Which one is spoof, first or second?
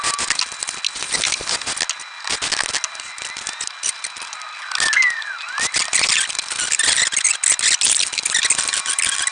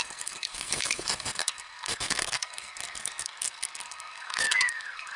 second